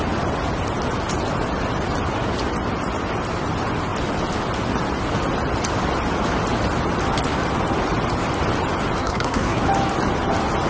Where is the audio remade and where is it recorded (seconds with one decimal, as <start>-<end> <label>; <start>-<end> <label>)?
0.0-9.0 recorded; 9.0-9.6 remade; 9.6-10.7 recorded